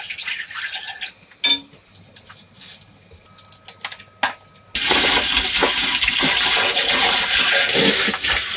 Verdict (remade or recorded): recorded